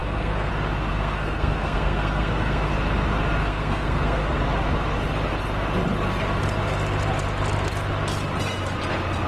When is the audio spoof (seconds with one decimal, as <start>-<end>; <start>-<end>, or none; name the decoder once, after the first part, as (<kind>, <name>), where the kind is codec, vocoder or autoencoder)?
0.0-0.5 (codec, SNAC); 0.9-2.7; 3.4-4.4